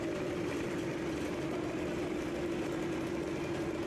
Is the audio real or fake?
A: real